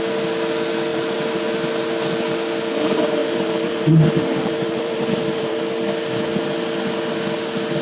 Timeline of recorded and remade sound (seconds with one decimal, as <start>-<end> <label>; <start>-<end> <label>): 0.0-0.9 recorded; 0.9-1.4 remade; 1.4-3.2 recorded; 3.2-5.6 remade; 5.6-7.8 recorded